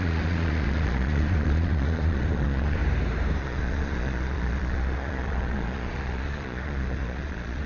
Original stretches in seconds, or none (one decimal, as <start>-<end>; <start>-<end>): 2.8-3.4